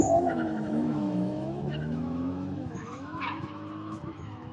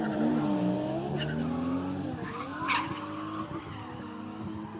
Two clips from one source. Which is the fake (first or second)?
first